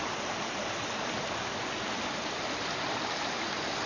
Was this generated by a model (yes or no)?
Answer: no